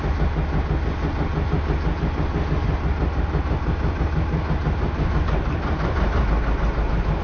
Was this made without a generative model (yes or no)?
yes